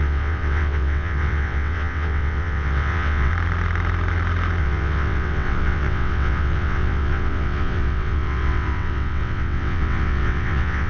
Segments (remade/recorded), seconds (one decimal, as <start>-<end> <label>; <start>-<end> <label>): 0.0-3.3 remade; 3.3-4.6 recorded; 4.6-10.9 remade